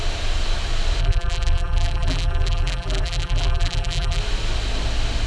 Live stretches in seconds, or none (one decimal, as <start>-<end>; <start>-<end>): 0.0-1.0; 4.2-5.3